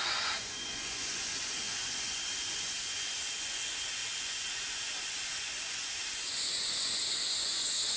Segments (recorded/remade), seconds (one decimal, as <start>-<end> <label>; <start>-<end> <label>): 0.0-8.0 remade